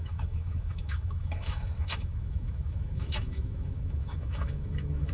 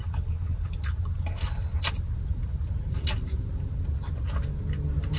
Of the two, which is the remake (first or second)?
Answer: first